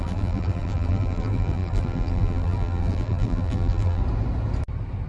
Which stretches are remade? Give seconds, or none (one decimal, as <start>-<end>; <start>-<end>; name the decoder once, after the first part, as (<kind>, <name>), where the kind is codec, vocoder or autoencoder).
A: 0.0-4.0 (vocoder, BigVGAN v2)